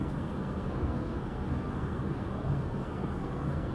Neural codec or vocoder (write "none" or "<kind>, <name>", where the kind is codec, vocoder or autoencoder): codec, SNAC